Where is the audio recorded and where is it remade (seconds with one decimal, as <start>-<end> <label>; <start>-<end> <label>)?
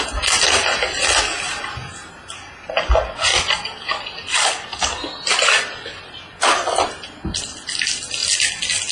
0.0-8.9 recorded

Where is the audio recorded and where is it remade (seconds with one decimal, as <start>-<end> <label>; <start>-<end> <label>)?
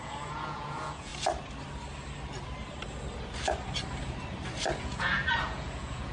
0.0-1.1 remade; 1.1-4.8 recorded; 4.8-6.1 remade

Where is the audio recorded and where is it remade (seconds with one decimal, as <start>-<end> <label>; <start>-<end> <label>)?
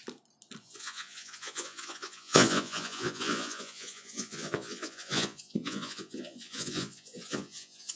0.0-0.6 recorded; 0.6-8.0 remade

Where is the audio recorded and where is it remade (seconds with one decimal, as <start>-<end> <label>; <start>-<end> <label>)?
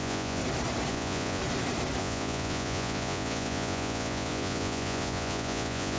0.0-0.4 remade; 0.4-0.9 recorded; 0.9-1.4 remade; 1.4-2.0 recorded; 2.0-6.0 remade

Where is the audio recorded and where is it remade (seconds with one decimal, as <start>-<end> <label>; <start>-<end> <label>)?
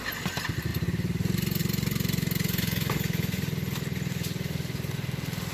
0.0-5.5 recorded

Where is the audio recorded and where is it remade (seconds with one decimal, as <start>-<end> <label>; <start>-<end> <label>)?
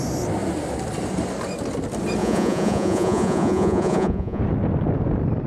0.0-2.2 recorded; 2.2-4.4 remade; 4.4-5.5 recorded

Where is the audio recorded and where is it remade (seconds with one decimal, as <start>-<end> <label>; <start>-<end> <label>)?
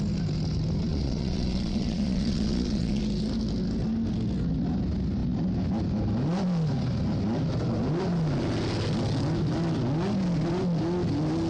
0.0-0.9 recorded; 0.9-3.0 remade; 3.0-11.5 recorded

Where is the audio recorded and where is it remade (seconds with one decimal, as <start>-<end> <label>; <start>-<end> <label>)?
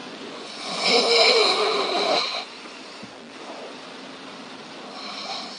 0.0-0.9 remade; 0.9-1.4 recorded; 1.4-2.8 remade; 2.8-5.6 recorded